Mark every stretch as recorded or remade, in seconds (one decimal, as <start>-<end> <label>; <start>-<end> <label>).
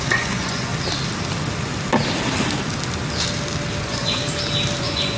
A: 0.0-0.7 remade; 0.7-3.8 recorded; 3.8-4.2 remade; 4.2-4.8 recorded; 4.8-5.2 remade